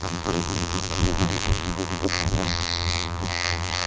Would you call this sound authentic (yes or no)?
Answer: no